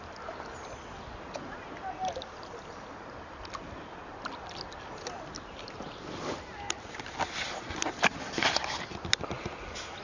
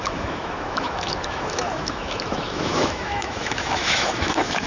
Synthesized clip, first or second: second